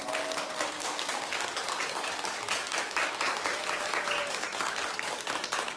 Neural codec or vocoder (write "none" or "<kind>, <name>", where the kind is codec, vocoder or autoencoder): codec, DAC